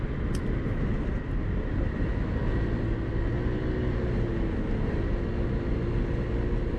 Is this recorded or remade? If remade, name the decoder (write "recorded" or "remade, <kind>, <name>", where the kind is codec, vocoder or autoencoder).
recorded